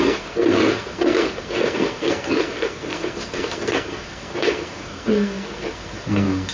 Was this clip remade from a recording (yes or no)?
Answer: yes